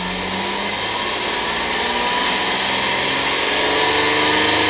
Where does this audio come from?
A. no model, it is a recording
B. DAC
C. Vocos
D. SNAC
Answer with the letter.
A